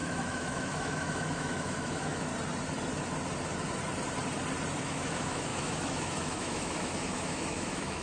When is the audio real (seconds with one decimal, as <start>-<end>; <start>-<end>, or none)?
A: 2.3-4.8